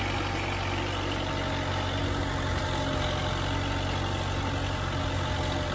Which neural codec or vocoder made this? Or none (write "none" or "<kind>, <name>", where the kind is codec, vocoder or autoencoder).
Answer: none